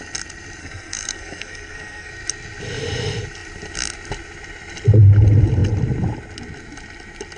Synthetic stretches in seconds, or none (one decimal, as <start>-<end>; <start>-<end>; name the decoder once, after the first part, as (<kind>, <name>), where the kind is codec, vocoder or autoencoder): 0.6-2.1 (codec, SNAC)